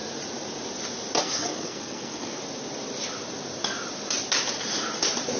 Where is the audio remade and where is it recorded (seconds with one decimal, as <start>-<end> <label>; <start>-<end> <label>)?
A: 0.0-1.2 recorded; 1.2-2.4 remade; 2.4-5.4 recorded